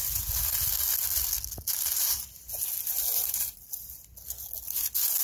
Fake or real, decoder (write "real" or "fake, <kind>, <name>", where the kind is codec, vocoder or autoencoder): real